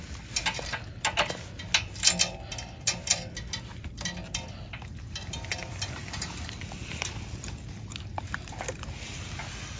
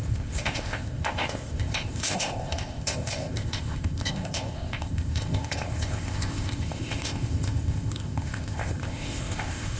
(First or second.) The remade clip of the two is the second